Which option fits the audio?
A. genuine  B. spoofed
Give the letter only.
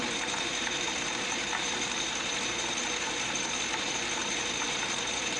B